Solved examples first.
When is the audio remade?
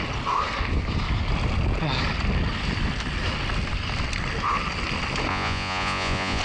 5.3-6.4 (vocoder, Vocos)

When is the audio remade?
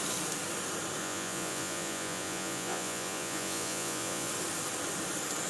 1.0-4.3 (vocoder, Vocos)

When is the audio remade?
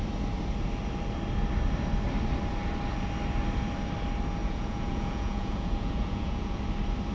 4.4-6.6 (vocoder, Vocos)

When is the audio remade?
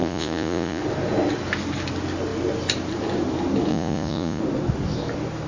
0.0-0.8 (vocoder, Vocos); 3.7-4.4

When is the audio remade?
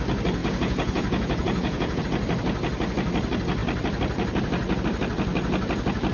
0.4-2.0 (vocoder, Vocos)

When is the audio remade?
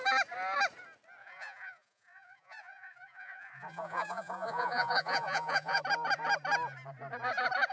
1.2-5.8 (vocoder, Vocos)